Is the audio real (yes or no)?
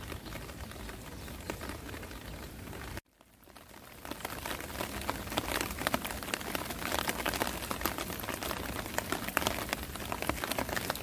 yes